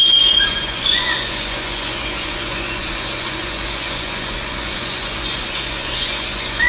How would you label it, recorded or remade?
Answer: remade